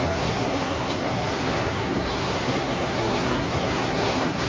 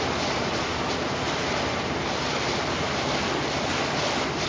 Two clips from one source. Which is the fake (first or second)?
first